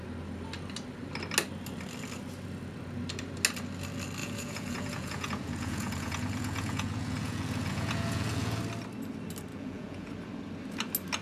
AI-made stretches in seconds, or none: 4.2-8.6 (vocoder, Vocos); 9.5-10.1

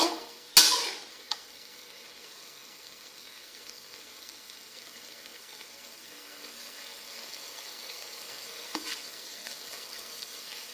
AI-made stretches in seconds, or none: 0.0-0.5 (codec, SNAC); 1.1-10.7

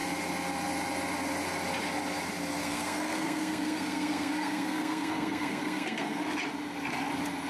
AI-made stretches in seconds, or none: 2.6-6.3 (codec, SNAC)

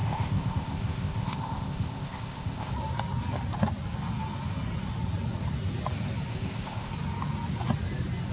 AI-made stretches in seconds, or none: 0.0-2.7 (codec, ZipCodec); 6.3-6.9